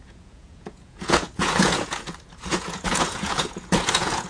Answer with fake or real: fake